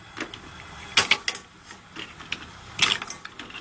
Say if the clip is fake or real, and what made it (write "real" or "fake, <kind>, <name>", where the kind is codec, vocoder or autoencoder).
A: real